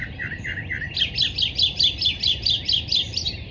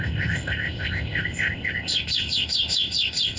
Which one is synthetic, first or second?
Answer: second